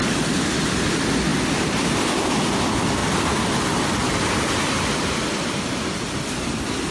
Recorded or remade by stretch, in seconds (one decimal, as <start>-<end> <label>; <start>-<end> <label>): 0.0-1.3 recorded; 1.3-1.8 remade; 1.8-3.0 recorded; 3.0-3.5 remade; 3.5-4.0 recorded; 4.0-4.9 remade; 4.9-6.9 recorded